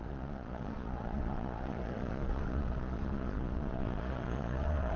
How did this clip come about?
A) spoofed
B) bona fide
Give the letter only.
A